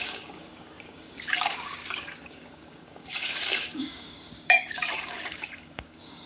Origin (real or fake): fake